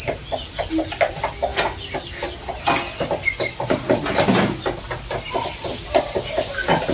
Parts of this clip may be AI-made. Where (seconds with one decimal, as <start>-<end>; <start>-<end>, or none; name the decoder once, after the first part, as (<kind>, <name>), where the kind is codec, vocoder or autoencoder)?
none